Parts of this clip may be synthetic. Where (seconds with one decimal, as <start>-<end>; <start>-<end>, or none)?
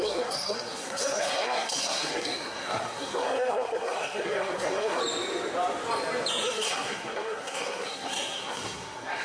0.0-5.0; 6.3-9.2